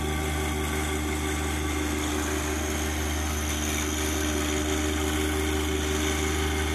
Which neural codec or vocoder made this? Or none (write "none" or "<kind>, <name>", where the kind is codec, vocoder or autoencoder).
none